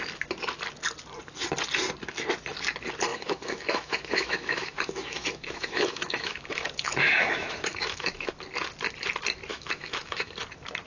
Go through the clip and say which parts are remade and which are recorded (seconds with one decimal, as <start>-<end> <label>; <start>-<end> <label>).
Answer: 0.0-3.1 recorded; 3.1-8.3 remade; 8.3-9.5 recorded; 9.5-10.4 remade; 10.4-10.9 recorded